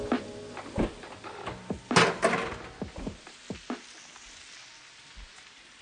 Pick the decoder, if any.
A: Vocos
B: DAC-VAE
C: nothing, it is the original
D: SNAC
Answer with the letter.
C